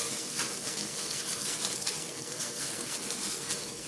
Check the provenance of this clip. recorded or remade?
remade